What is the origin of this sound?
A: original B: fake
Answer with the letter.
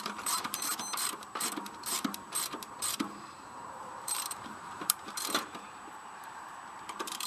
B